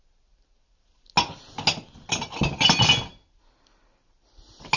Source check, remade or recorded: recorded